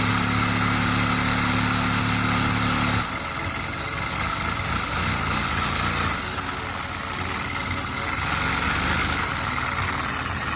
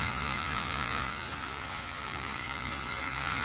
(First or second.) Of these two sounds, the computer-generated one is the second